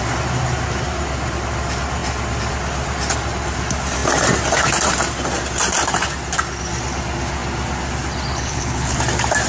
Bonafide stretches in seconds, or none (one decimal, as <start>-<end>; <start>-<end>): 0.0-8.3; 9.0-9.5